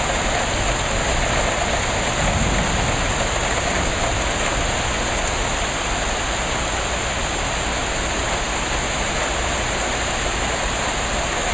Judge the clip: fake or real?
real